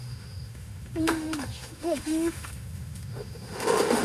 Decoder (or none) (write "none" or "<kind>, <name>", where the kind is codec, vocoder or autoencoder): autoencoder, DAC-VAE